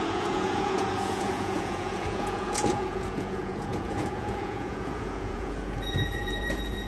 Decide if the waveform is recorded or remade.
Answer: remade